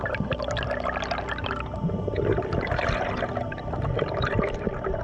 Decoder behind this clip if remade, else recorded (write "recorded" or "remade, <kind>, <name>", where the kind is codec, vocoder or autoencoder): recorded